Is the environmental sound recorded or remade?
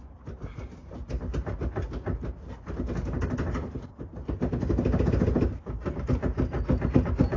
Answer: recorded